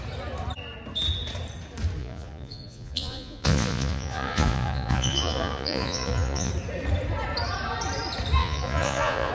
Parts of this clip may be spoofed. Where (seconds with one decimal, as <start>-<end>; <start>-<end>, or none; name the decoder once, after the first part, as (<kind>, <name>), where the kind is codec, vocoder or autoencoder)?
2.0-6.5 (vocoder, Vocos); 8.4-9.3